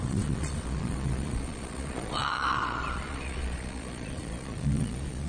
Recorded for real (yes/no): no